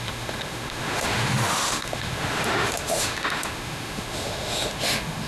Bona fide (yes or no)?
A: no